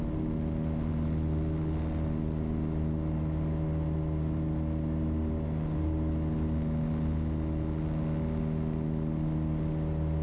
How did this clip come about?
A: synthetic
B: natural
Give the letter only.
B